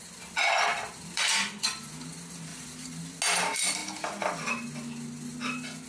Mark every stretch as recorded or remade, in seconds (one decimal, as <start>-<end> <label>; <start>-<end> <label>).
0.0-0.7 recorded; 0.7-1.3 remade; 1.3-2.5 recorded; 2.5-3.0 remade; 3.0-5.9 recorded